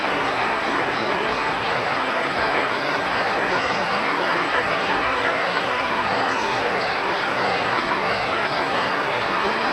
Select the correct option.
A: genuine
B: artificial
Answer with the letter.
B